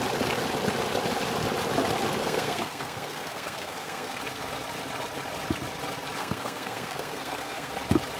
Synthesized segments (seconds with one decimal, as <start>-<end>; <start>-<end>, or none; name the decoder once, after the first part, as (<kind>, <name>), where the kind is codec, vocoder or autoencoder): 2.2-4.2 (codec, SNAC); 6.2-7.7